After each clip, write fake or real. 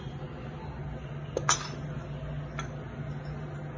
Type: real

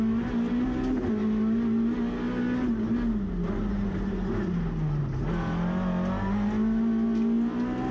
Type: real